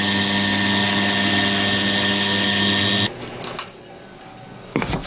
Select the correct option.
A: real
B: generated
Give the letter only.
A